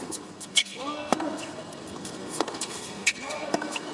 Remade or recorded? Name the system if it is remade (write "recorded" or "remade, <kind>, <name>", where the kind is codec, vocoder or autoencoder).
remade, codec, SNAC